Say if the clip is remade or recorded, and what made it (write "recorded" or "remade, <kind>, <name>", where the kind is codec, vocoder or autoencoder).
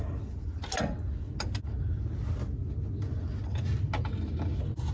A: recorded